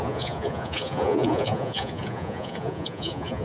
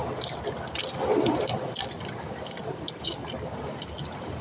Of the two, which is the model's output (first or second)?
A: first